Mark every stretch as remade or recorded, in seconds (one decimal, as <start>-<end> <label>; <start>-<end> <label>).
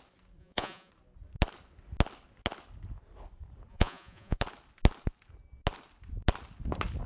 0.0-0.4 recorded; 0.4-0.9 remade; 0.9-3.7 recorded; 3.7-4.4 remade; 4.4-7.1 recorded